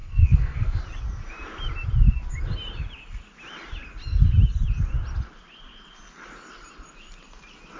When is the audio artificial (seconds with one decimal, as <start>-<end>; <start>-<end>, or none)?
0.0-0.8